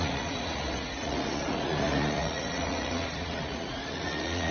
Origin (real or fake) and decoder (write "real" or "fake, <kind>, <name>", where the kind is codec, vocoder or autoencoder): fake, vocoder, Vocos